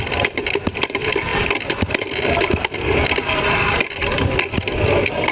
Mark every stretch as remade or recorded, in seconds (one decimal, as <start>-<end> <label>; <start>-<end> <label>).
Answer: 0.0-5.3 recorded